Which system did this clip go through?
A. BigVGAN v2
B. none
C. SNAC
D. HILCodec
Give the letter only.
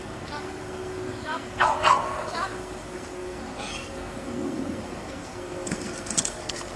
C